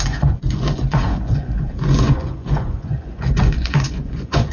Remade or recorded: remade